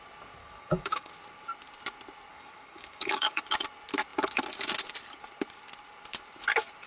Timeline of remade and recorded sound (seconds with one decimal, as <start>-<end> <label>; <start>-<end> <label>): 0.0-0.4 recorded; 0.4-1.1 remade; 1.1-2.3 recorded; 2.3-3.4 remade; 3.4-6.9 recorded